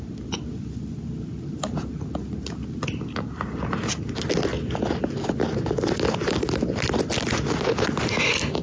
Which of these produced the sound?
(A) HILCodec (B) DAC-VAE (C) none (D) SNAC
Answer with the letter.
C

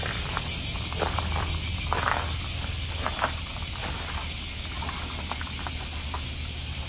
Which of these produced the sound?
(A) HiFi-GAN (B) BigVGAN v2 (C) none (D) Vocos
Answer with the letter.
C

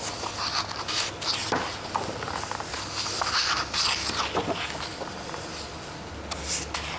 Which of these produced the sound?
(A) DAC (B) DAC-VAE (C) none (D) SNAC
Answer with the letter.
C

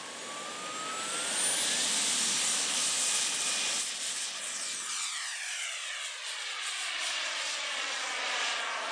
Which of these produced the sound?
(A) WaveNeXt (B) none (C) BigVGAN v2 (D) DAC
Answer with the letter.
B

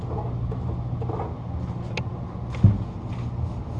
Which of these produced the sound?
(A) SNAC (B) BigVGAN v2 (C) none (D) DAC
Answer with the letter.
C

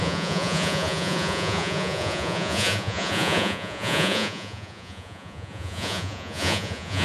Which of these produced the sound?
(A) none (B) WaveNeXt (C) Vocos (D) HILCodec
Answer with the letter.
C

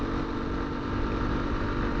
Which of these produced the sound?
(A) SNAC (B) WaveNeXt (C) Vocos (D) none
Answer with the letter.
D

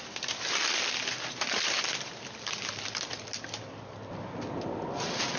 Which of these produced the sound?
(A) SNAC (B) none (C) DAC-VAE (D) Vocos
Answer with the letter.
B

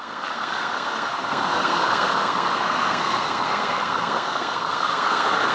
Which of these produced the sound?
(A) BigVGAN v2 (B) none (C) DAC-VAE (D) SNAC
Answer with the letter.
D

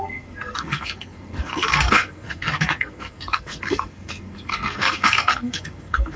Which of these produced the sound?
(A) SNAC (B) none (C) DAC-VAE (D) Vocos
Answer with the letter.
A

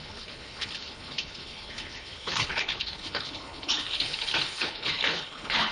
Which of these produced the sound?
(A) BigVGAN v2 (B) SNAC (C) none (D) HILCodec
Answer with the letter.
D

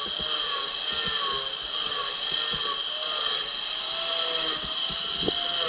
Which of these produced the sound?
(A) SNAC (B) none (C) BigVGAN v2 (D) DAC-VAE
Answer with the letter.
B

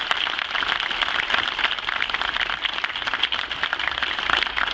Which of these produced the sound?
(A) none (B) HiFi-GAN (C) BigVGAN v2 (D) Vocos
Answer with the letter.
A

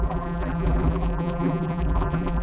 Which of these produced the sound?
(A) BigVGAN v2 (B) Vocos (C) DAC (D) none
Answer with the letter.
A